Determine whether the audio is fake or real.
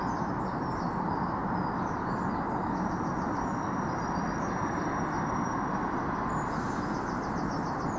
real